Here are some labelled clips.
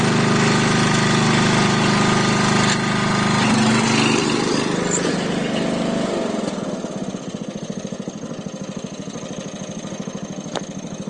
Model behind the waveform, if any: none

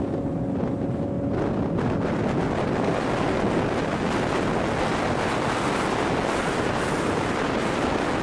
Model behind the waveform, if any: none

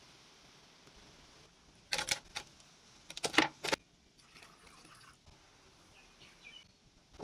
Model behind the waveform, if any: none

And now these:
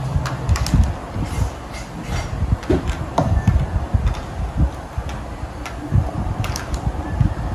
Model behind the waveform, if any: none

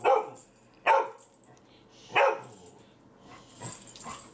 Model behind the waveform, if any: none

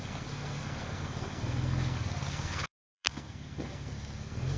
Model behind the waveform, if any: codec, SNAC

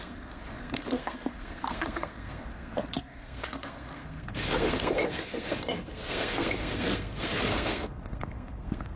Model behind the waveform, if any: codec, SNAC